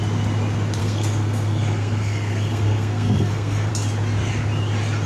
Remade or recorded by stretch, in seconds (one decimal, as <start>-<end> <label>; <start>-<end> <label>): 0.0-0.8 recorded; 0.8-3.7 remade; 3.7-5.1 recorded